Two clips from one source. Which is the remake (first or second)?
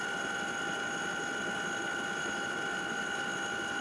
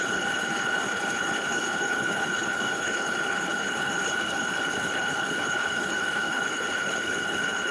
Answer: second